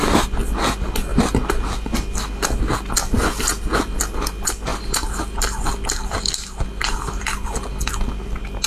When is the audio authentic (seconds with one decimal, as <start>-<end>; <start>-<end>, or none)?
0.0-4.7; 7.7-8.7